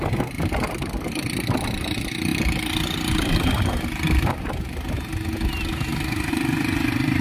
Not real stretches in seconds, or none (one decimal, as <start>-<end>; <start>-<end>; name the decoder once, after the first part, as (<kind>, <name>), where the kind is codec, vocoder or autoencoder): none